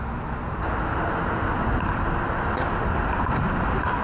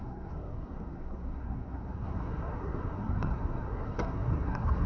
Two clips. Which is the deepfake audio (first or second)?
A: second